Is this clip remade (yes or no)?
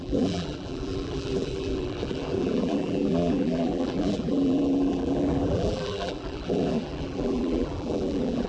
yes